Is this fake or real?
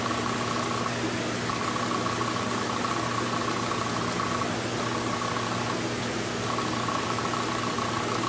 real